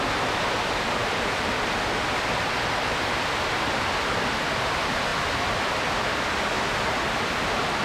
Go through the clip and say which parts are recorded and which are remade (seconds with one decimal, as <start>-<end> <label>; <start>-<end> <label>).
0.0-1.0 recorded; 1.0-1.9 remade; 1.9-5.1 recorded; 5.1-6.0 remade; 6.0-7.8 recorded

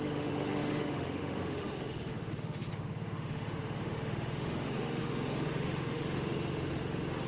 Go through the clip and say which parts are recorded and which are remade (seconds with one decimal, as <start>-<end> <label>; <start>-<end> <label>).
0.0-7.3 remade

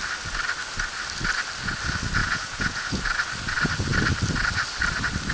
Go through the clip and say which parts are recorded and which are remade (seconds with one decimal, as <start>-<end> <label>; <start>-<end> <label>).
0.0-2.2 recorded; 2.2-3.0 remade; 3.0-5.3 recorded

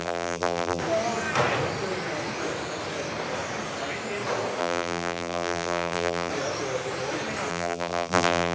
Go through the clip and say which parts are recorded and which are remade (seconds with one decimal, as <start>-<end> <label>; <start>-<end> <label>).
0.0-0.8 remade; 0.8-4.6 recorded; 4.6-6.3 remade; 6.3-7.5 recorded; 7.5-8.5 remade

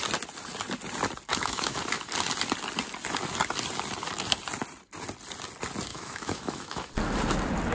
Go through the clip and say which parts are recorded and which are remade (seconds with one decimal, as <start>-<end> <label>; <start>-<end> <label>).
0.0-1.3 recorded; 1.3-1.8 remade; 1.8-5.9 recorded; 5.9-6.9 remade; 6.9-7.7 recorded

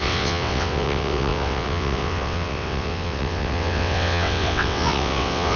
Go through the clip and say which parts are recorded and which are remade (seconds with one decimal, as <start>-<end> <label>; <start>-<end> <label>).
0.0-5.6 remade

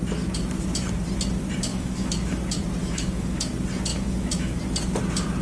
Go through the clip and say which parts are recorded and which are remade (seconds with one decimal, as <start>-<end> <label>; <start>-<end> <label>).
0.0-1.7 recorded; 1.7-2.4 remade; 2.4-2.8 recorded; 2.8-3.5 remade; 3.5-3.9 recorded; 3.9-4.6 remade; 4.6-5.4 recorded

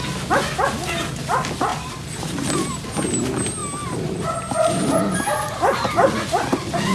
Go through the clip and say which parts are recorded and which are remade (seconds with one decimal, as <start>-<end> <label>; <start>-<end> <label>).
0.0-6.9 recorded